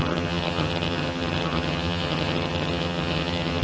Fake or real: fake